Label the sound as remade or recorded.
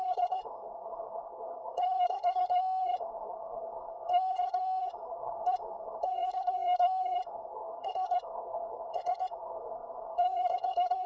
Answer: remade